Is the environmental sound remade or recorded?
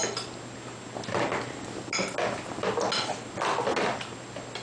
recorded